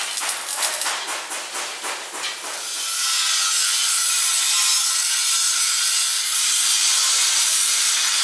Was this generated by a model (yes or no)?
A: no